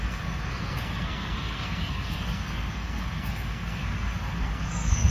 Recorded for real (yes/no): no